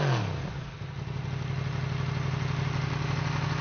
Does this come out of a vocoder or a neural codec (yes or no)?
no